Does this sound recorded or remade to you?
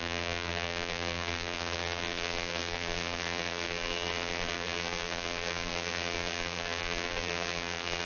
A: remade